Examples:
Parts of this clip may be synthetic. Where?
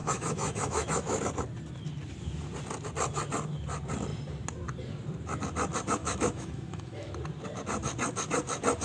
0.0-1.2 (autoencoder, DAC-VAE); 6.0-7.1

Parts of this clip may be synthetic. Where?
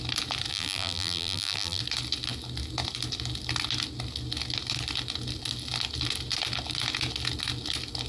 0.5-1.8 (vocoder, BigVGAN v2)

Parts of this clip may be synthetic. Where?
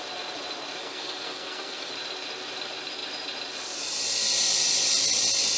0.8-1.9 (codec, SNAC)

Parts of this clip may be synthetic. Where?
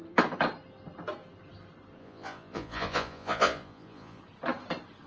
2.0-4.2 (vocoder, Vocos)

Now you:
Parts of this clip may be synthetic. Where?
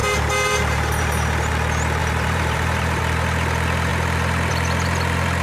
0.0-1.5 (vocoder, BigVGAN v2); 2.0-3.0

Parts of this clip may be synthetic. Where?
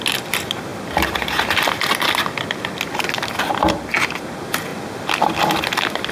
none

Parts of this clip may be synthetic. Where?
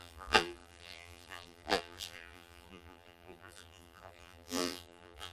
0.0-5.3 (vocoder, BigVGAN v2)